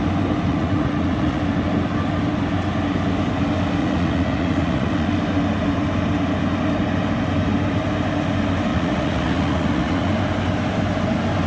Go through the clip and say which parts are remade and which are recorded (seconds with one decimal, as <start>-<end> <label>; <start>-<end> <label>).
0.0-0.5 recorded; 0.5-1.4 remade; 1.4-3.8 recorded; 3.8-5.1 remade; 5.1-8.7 recorded; 8.7-10.1 remade; 10.1-11.5 recorded